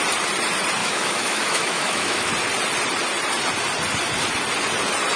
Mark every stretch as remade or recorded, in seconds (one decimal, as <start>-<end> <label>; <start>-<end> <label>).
0.0-0.8 recorded; 0.8-2.3 remade; 2.3-5.2 recorded